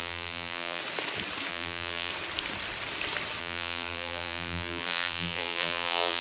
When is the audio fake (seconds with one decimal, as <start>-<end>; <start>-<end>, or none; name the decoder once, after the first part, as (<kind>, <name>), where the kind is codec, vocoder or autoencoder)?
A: 0.0-0.8 (vocoder, BigVGAN v2); 1.5-2.1; 3.4-6.2